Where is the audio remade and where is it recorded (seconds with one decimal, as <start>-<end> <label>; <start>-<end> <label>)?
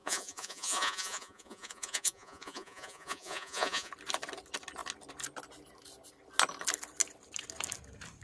0.0-3.9 remade; 3.9-8.2 recorded